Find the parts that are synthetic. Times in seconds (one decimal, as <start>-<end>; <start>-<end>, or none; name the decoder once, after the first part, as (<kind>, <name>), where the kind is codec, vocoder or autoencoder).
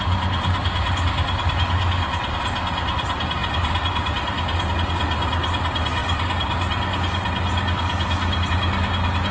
none